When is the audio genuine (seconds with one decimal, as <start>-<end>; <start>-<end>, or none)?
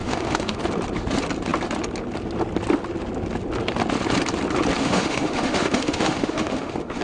0.6-4.8